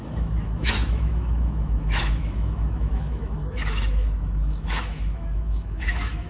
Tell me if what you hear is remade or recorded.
remade